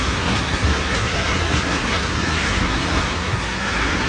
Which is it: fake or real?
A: fake